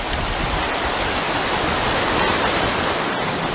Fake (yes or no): no